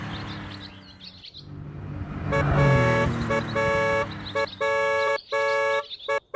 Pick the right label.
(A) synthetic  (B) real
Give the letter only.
B